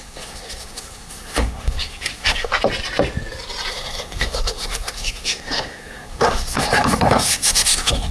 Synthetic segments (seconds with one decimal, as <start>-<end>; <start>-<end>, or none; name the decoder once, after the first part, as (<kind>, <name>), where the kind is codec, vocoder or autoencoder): 0.0-2.5 (codec, SNAC); 3.7-8.1